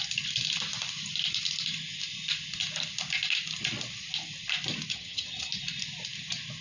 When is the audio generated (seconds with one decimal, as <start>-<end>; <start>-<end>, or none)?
4.9-5.5

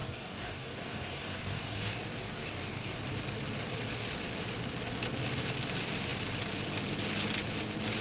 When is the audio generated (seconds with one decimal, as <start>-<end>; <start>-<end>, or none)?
0.0-3.0

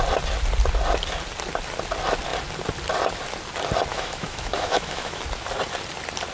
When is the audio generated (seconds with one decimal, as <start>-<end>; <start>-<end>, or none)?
3.9-5.2